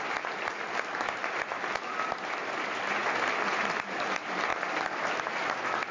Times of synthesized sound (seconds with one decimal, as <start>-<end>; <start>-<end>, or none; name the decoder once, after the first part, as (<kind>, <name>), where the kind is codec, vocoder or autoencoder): none